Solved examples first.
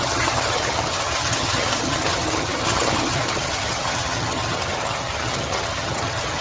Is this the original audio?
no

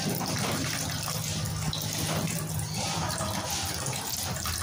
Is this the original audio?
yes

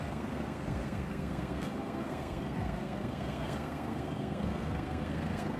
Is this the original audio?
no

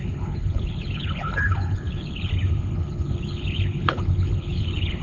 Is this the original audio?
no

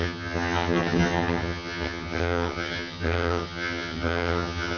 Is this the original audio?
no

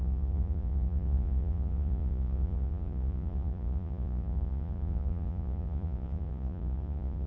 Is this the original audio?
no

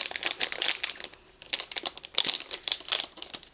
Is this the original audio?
no